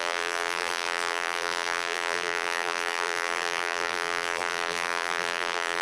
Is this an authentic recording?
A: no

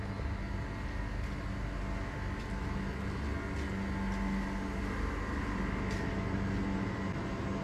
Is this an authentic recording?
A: yes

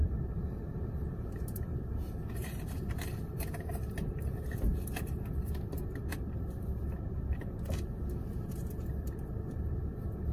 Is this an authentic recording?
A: no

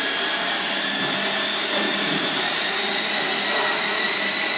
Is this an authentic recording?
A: no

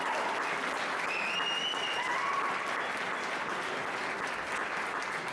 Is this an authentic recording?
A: yes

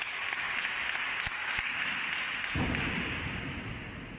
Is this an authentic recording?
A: yes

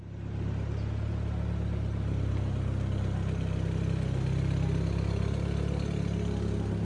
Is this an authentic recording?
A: yes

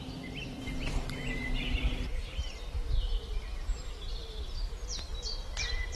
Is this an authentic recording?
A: no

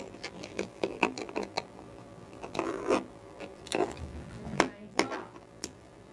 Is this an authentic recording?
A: no